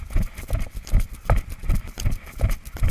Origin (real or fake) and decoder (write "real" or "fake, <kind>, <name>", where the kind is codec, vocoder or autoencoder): real